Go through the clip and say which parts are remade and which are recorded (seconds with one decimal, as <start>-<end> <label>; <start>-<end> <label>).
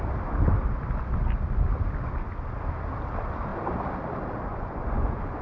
0.0-4.5 recorded; 4.5-5.4 remade